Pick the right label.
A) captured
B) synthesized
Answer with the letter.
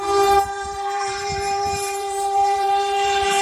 B